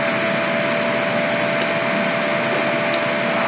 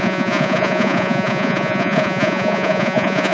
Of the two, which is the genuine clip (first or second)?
first